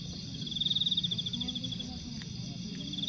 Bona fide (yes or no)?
yes